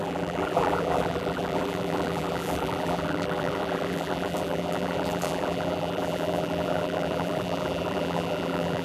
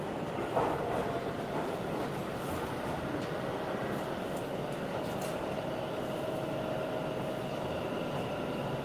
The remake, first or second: first